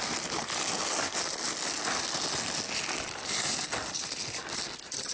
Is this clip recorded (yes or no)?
yes